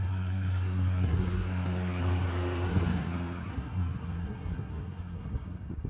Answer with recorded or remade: remade